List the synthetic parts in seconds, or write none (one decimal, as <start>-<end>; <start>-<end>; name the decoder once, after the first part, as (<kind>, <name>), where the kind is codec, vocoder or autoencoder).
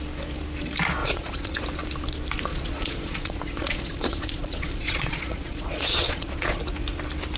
1.0-1.6 (vocoder, Vocos); 2.5-6.6